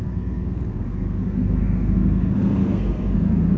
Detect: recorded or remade remade